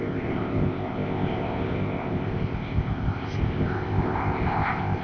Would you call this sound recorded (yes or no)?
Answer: no